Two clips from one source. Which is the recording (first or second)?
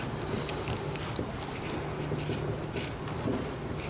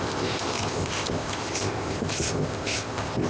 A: first